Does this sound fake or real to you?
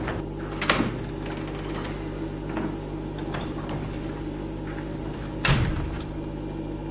real